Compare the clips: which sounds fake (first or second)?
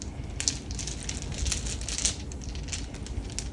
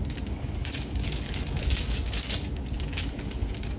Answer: second